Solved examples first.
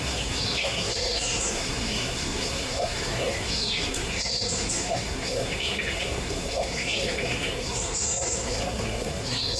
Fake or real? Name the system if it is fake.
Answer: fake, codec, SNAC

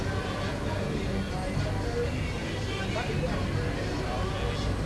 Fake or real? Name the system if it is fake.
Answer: real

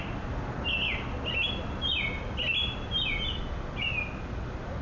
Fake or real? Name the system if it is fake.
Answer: real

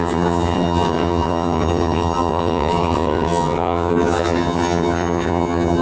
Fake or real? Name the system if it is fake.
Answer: fake, vocoder, HiFi-GAN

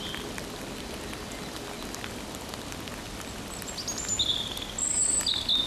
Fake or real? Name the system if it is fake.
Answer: real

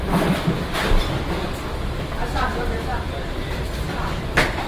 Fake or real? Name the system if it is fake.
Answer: fake, vocoder, BigVGAN v2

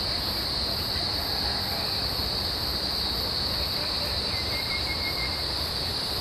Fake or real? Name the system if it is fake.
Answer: real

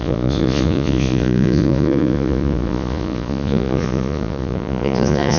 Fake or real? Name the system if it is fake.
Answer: fake, vocoder, Vocos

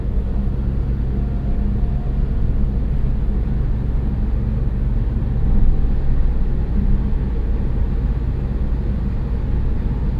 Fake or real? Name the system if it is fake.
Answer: real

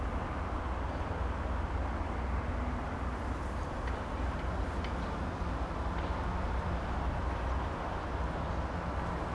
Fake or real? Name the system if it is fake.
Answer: real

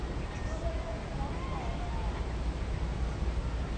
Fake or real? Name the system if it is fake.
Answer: real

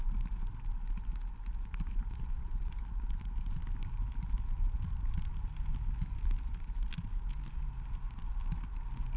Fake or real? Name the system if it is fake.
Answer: real